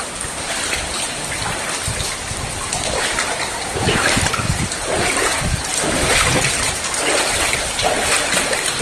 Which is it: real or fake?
real